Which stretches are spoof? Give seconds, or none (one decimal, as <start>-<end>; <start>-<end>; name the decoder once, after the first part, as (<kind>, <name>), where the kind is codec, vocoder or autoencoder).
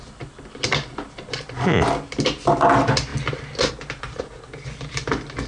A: none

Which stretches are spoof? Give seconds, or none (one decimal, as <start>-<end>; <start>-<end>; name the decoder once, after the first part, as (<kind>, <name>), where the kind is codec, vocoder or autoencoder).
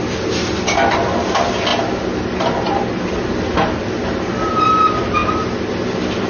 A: none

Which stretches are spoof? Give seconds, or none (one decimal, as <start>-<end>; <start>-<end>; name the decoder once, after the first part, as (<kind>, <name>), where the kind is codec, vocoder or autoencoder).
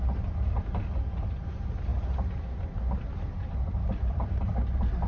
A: none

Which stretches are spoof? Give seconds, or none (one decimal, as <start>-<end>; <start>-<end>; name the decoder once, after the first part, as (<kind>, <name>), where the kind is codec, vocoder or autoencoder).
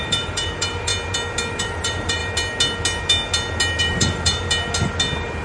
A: 0.0-0.9 (vocoder, BigVGAN v2); 1.5-2.2; 3.8-4.4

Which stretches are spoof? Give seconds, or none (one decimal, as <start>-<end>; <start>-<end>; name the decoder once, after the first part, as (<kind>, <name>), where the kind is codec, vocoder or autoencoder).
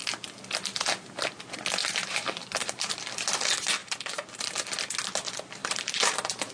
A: 1.8-2.9 (vocoder, BigVGAN v2); 3.8-4.7; 5.6-6.5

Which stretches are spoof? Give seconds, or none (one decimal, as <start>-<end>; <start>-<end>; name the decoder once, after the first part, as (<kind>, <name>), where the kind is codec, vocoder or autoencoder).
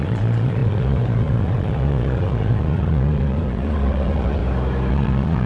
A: 0.0-4.4 (vocoder, Vocos); 4.9-5.5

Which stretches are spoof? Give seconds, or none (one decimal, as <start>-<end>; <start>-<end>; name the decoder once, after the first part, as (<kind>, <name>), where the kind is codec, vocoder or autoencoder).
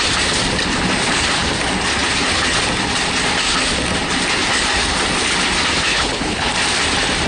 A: 5.9-6.5 (codec, HILCodec)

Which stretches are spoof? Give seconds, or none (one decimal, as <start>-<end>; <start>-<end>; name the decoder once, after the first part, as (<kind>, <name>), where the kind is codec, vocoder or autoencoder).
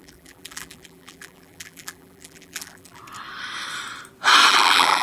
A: 0.0-3.0 (vocoder, BigVGAN v2); 4.5-5.0